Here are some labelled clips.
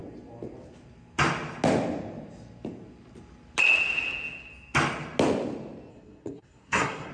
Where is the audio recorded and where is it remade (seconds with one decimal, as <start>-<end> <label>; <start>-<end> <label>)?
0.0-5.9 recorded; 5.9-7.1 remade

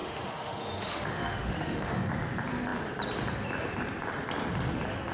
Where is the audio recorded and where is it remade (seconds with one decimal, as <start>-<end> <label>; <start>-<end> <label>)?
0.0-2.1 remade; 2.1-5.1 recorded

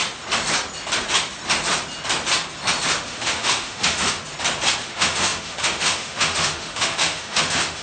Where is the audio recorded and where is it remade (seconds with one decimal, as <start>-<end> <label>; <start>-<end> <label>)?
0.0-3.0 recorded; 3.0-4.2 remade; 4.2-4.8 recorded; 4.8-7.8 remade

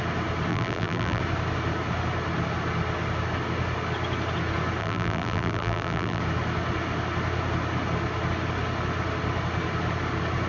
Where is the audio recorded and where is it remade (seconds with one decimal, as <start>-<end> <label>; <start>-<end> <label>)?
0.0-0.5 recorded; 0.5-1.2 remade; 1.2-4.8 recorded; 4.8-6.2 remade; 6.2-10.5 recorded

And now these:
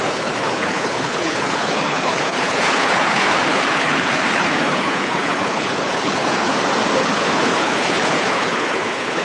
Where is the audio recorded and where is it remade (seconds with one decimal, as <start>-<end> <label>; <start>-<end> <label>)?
0.0-6.5 remade; 6.5-7.0 recorded; 7.0-9.2 remade

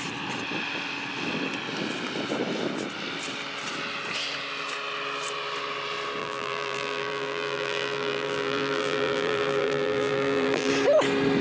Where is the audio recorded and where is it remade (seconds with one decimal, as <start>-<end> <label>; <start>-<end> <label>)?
0.0-6.2 recorded; 6.2-10.7 remade; 10.7-11.4 recorded

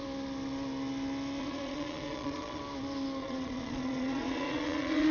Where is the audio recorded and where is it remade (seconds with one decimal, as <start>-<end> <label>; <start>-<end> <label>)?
0.0-1.4 recorded; 1.4-2.6 remade; 2.6-3.2 recorded; 3.2-5.1 remade

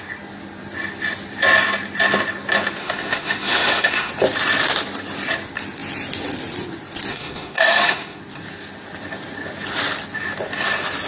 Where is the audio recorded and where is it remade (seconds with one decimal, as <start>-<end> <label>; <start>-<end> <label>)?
0.0-2.8 recorded; 2.8-4.1 remade; 4.1-7.1 recorded; 7.1-8.2 remade; 8.2-11.1 recorded